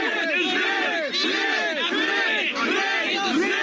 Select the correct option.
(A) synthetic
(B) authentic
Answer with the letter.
B